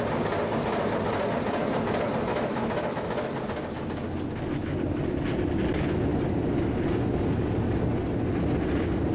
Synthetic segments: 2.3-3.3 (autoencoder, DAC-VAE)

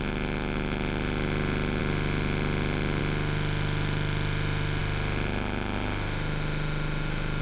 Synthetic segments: 0.0-7.4 (autoencoder, DAC-VAE)

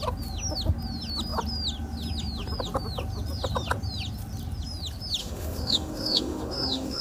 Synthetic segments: 5.2-7.0 (autoencoder, DAC-VAE)

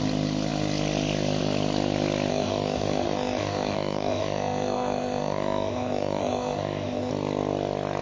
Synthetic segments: 2.3-7.1 (autoencoder, DAC-VAE)